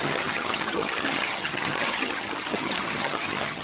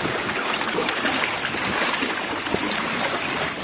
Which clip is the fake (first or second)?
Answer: first